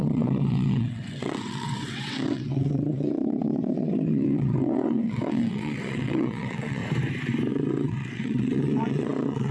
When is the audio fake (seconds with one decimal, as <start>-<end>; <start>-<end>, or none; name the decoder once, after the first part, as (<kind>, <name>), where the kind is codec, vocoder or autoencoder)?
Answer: 0.0-6.8 (vocoder, WaveNeXt); 7.5-9.5